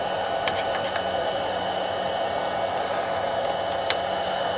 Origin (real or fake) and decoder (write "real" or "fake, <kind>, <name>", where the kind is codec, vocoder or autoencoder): real